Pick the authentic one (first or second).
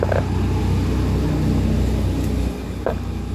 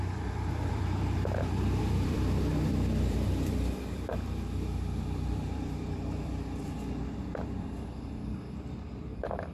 first